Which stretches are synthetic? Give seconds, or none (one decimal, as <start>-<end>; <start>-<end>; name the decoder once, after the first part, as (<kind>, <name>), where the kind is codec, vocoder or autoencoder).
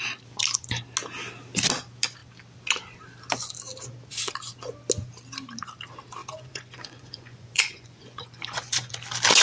6.2-8.9 (vocoder, Vocos)